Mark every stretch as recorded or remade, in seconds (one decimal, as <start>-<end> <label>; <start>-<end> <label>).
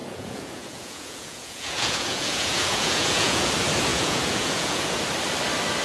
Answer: 0.0-3.5 remade; 3.5-3.9 recorded; 3.9-5.0 remade; 5.0-5.8 recorded